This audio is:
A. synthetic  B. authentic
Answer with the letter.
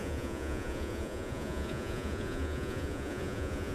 A